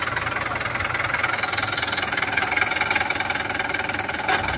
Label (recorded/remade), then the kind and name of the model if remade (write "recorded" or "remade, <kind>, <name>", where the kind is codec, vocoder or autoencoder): recorded